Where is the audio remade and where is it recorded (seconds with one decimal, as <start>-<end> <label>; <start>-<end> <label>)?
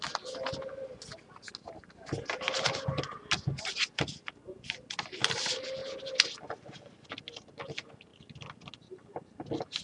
0.0-9.8 recorded